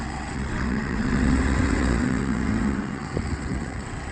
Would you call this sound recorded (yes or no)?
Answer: no